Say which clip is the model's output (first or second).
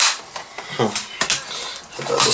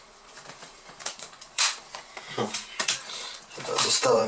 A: second